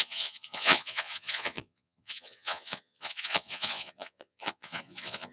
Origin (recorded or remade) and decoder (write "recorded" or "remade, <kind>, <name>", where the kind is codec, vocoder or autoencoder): remade, vocoder, Vocos